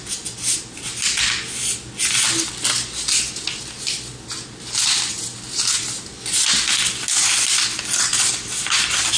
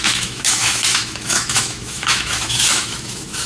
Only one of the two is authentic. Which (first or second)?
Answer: first